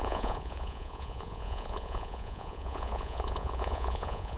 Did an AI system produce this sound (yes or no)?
yes